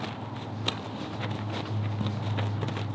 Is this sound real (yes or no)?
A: yes